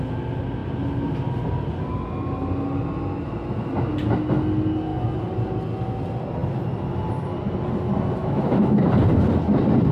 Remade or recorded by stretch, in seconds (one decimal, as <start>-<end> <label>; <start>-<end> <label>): 0.0-8.2 recorded; 8.2-8.9 remade; 8.9-9.9 recorded